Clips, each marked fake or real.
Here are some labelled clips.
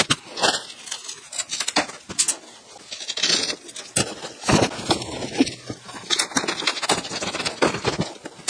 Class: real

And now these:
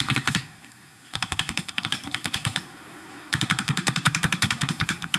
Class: fake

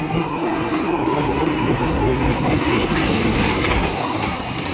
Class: fake